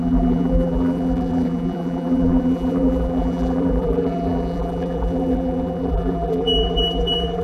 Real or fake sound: fake